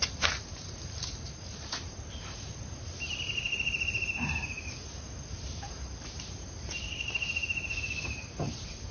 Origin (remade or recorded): remade